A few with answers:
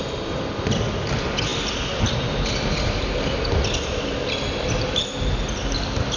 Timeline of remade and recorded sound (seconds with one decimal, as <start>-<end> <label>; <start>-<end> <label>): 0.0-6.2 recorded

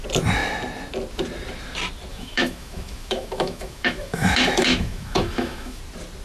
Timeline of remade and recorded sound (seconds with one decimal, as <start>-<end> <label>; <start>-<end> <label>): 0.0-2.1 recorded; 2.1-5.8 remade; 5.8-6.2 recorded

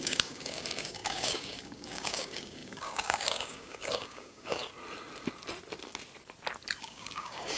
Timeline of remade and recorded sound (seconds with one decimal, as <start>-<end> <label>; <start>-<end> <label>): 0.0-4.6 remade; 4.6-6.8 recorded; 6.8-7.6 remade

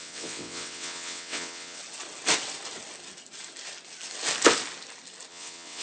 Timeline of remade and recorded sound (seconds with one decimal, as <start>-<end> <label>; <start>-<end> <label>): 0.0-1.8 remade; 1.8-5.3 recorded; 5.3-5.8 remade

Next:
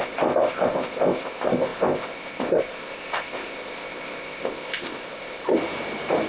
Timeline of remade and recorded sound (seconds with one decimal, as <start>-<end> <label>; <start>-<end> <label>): 0.0-5.5 remade; 5.5-6.3 recorded

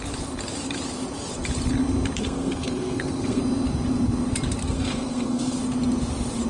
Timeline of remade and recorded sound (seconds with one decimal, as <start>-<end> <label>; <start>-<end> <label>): 0.0-2.2 recorded; 2.2-3.4 remade; 3.4-4.6 recorded; 4.6-5.6 remade; 5.6-6.5 recorded